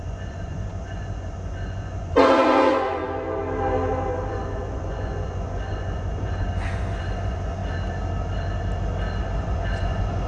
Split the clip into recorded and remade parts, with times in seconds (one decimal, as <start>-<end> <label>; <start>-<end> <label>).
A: 0.0-3.0 remade; 3.0-4.3 recorded; 4.3-7.6 remade; 7.6-9.2 recorded; 9.2-10.3 remade